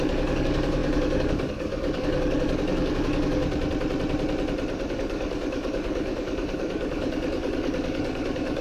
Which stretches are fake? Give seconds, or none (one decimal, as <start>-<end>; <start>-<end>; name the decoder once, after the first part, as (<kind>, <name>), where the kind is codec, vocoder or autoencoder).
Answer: 0.0-3.4 (codec, DAC); 4.9-8.6

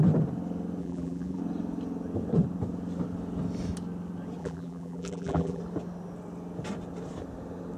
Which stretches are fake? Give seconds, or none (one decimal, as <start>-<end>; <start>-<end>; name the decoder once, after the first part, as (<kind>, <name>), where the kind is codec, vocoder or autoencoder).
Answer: 0.8-1.4 (vocoder, BigVGAN v2); 4.4-5.6